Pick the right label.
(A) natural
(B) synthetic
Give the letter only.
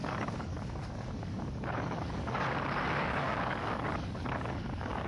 B